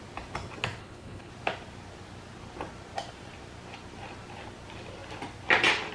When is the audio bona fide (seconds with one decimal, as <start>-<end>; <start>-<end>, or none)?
0.0-0.8; 1.3-5.9